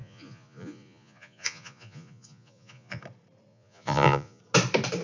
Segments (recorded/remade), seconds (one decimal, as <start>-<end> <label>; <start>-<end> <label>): 0.0-3.0 remade; 3.0-3.5 recorded; 3.5-4.4 remade; 4.4-5.0 recorded